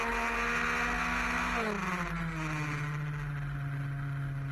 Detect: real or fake real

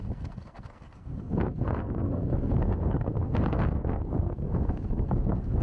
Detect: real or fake fake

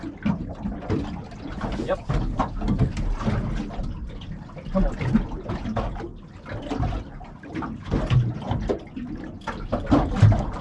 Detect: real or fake real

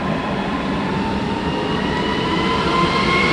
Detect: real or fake real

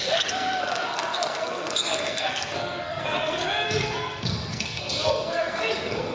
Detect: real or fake fake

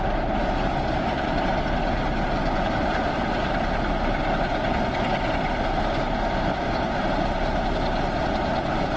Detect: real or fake real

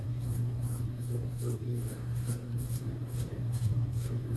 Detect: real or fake fake